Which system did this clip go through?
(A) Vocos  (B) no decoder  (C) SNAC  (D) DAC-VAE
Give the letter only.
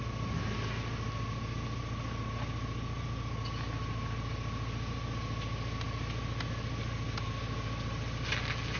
B